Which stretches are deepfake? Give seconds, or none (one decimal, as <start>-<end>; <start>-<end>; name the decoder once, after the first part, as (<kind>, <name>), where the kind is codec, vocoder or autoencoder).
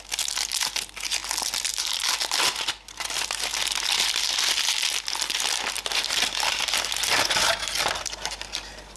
none